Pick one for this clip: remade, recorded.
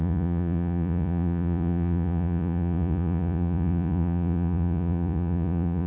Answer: remade